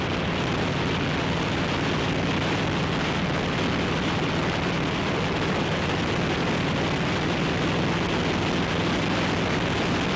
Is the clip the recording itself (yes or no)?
yes